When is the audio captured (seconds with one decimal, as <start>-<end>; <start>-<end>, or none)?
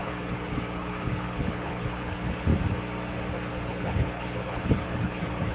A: 2.5-3.5